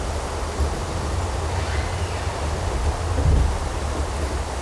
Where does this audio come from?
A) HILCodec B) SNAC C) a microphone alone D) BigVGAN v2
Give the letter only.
C